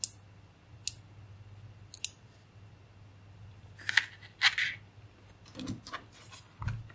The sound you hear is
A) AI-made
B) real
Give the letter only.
B